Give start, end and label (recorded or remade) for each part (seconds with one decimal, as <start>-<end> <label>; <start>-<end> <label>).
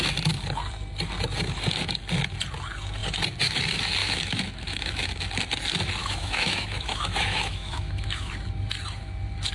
0.0-4.0 recorded; 4.0-5.1 remade; 5.1-6.0 recorded; 6.0-8.3 remade; 8.3-9.5 recorded